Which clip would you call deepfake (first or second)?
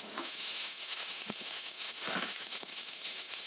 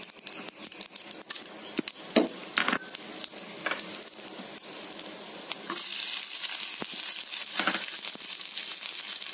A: first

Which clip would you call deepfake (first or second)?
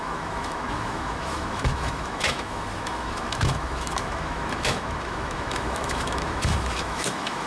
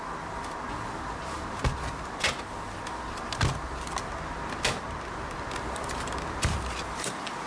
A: first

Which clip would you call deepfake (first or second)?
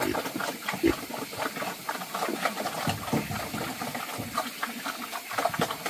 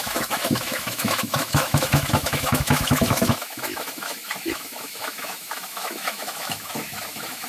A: second